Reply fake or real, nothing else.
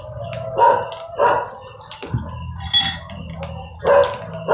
real